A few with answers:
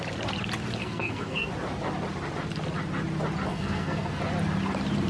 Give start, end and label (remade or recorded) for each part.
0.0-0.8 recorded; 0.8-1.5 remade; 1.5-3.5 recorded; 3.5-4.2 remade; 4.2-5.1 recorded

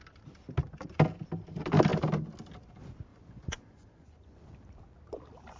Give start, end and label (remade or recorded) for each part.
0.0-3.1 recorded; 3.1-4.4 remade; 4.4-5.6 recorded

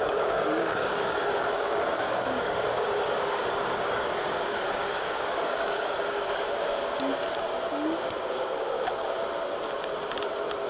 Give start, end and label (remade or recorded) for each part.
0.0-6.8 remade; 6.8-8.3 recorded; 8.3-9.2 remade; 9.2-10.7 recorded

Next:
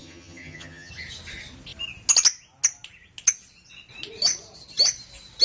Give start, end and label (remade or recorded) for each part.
0.0-0.9 remade; 0.9-5.4 recorded